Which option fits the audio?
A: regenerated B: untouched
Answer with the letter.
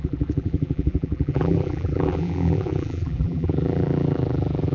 A